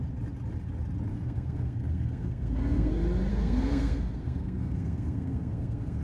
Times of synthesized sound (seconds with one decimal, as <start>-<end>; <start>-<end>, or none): 1.1-2.9; 3.3-6.0